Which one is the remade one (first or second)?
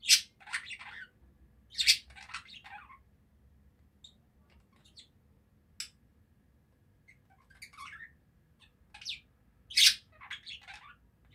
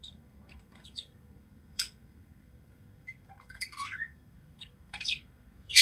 second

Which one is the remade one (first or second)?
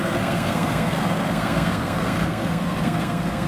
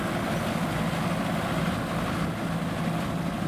first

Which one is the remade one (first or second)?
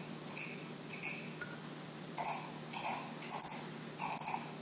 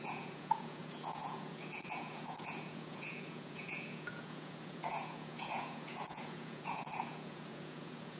second